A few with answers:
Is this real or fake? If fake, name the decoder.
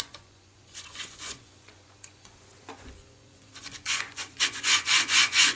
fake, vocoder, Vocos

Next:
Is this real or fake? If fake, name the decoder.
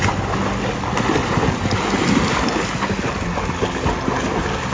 real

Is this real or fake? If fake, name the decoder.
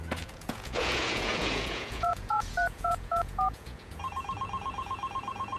fake, vocoder, Vocos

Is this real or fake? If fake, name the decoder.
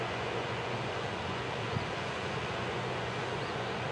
fake, vocoder, Vocos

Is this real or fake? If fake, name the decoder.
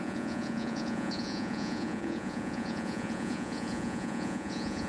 fake, vocoder, Vocos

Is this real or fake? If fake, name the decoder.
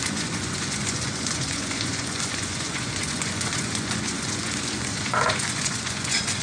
fake, vocoder, Vocos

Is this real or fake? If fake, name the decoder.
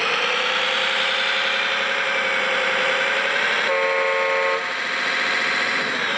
real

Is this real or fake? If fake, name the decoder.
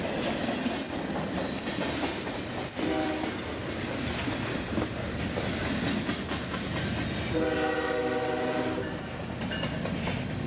real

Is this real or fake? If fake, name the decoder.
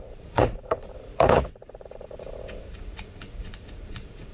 fake, vocoder, Vocos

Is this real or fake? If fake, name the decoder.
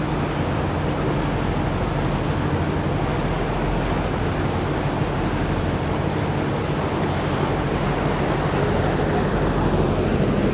real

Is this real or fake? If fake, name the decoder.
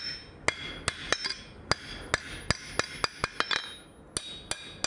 real